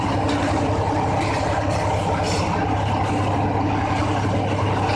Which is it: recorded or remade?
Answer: recorded